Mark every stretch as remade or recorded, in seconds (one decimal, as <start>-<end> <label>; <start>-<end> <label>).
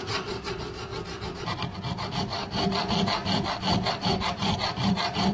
0.0-0.9 remade; 0.9-1.4 recorded; 1.4-3.2 remade; 3.2-4.1 recorded; 4.1-5.3 remade